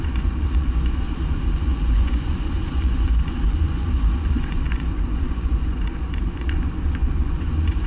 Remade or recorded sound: remade